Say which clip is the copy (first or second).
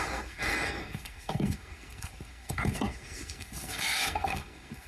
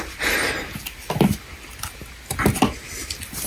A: first